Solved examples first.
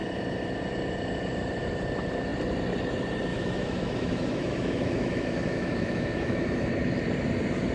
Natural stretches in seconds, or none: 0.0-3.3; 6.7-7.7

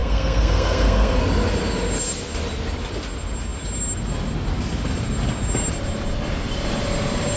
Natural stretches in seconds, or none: 1.2-7.4